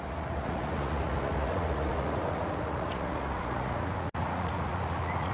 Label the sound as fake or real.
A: fake